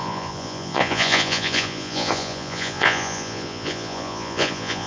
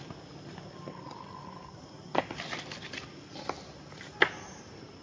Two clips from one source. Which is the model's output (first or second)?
first